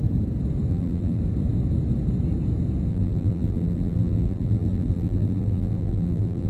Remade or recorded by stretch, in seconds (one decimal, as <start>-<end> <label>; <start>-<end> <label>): 0.0-0.7 recorded; 0.7-1.2 remade; 1.2-2.9 recorded; 2.9-6.5 remade